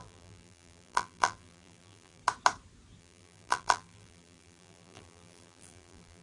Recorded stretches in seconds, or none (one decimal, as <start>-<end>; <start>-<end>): 2.2-3.0